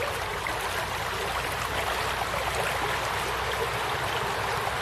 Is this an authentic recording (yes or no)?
yes